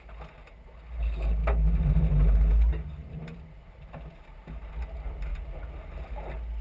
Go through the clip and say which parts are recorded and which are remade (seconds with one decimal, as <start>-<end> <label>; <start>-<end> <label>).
0.0-6.6 recorded